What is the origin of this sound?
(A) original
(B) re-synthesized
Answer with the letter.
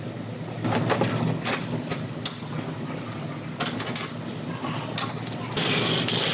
A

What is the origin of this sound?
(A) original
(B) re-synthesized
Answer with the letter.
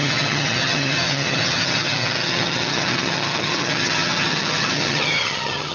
B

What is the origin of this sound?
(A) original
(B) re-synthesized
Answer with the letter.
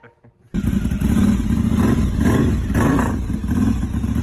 A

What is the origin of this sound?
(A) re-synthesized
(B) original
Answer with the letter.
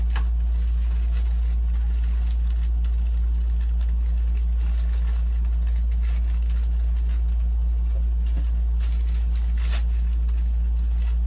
B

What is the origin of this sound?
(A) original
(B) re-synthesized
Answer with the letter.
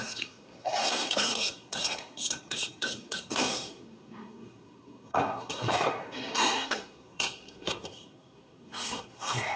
B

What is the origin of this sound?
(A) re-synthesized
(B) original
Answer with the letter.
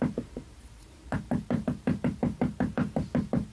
A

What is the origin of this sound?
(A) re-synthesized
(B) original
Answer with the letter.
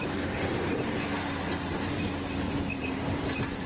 B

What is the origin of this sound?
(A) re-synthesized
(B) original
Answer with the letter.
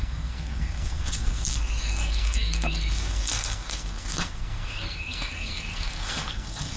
A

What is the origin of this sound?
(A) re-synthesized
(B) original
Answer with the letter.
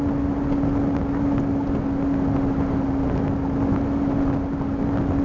B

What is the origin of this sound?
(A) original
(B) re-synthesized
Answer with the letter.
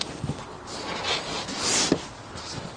A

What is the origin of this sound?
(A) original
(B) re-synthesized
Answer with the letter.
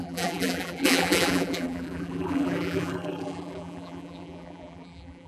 B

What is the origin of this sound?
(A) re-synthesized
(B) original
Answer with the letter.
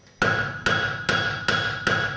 B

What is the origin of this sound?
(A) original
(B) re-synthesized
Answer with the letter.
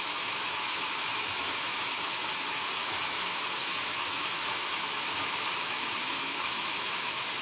B